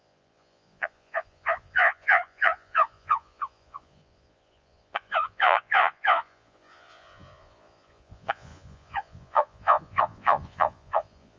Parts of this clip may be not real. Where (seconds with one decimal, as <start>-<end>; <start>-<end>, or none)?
0.0-11.4